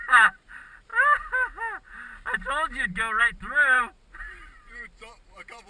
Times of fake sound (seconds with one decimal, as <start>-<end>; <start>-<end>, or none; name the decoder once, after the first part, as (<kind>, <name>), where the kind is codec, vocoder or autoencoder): 0.0-0.9 (vocoder, BigVGAN v2); 3.2-5.7